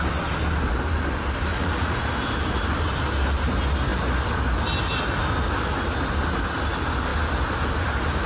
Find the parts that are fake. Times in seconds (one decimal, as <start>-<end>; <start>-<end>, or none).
1.5-2.1